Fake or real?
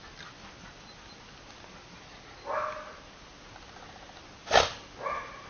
real